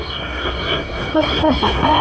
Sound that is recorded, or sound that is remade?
remade